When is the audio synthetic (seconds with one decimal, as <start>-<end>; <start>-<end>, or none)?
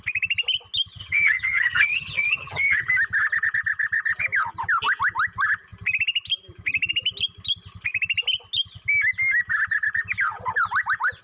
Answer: 1.0-2.9